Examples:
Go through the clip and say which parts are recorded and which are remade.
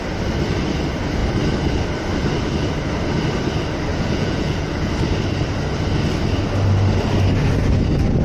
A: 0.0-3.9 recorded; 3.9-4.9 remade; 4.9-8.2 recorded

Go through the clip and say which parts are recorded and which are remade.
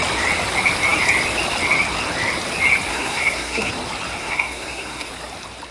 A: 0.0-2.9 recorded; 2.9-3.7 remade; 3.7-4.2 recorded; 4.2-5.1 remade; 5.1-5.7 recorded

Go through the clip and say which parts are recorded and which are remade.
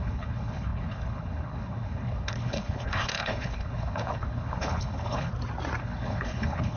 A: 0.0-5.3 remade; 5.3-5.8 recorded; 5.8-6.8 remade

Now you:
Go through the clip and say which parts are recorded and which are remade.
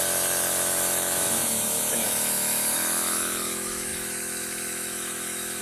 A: 0.0-5.6 remade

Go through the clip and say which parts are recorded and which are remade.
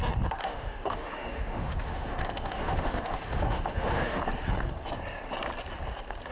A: 0.0-0.4 recorded; 0.4-4.2 remade; 4.2-6.3 recorded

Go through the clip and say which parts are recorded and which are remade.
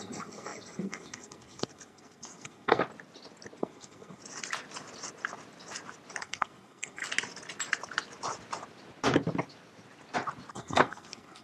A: 0.0-2.8 remade; 2.8-3.6 recorded; 3.6-4.2 remade; 4.2-6.2 recorded; 6.2-7.0 remade; 7.0-10.5 recorded; 10.5-11.4 remade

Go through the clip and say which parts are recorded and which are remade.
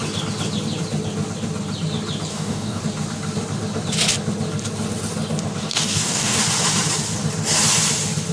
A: 0.0-2.3 recorded; 2.3-2.8 remade; 2.8-5.6 recorded; 5.6-6.4 remade; 6.4-8.3 recorded